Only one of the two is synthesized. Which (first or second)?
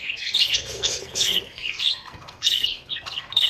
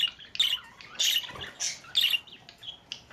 first